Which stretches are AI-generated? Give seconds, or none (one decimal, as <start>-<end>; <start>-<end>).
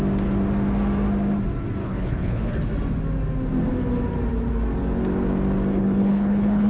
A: 1.8-2.7; 5.7-6.7